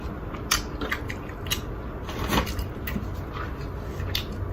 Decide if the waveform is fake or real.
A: real